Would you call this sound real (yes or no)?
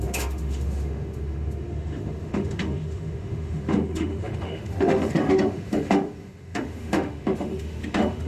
no